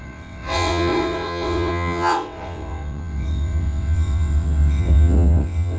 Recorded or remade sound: remade